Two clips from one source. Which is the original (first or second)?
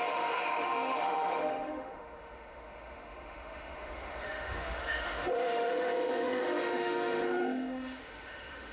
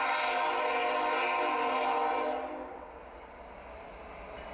second